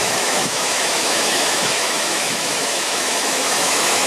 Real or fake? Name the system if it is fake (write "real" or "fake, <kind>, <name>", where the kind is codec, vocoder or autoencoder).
fake, autoencoder, DAC-VAE